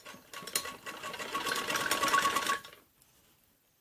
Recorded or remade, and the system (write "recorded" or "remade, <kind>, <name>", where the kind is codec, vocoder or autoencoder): recorded